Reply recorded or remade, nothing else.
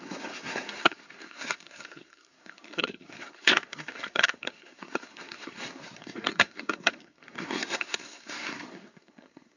remade